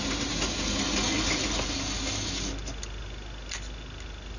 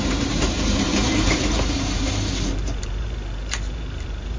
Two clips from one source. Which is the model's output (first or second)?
second